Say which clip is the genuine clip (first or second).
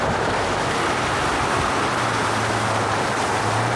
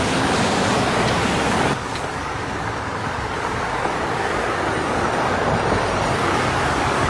first